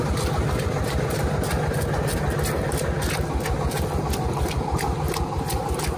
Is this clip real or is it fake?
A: real